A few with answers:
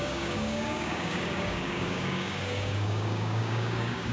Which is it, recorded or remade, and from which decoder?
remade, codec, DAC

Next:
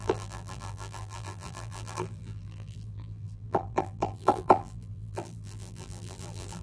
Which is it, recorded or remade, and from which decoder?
remade, vocoder, BigVGAN v2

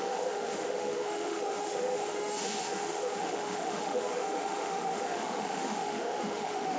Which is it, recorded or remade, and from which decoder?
remade, autoencoder, DAC-VAE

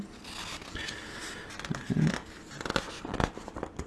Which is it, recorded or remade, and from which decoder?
recorded